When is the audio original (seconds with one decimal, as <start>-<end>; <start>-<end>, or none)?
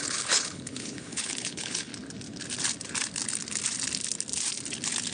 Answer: 1.9-5.1